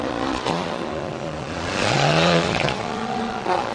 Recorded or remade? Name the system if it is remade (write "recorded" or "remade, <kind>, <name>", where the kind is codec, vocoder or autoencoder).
remade, vocoder, Vocos